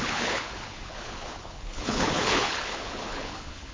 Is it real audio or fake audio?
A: fake